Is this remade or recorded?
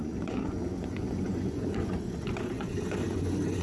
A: remade